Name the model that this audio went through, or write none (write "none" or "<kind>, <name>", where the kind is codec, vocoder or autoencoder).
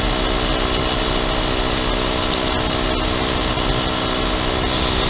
none